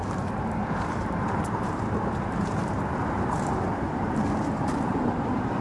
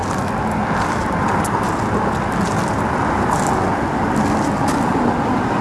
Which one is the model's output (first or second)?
first